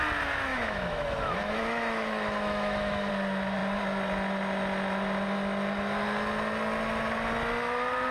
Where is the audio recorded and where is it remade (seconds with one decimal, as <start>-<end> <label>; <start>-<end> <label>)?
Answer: 0.0-0.5 recorded; 0.5-3.1 remade; 3.1-8.1 recorded